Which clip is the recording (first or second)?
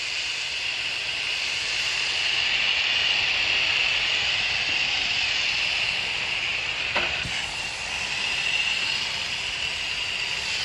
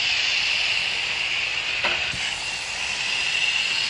second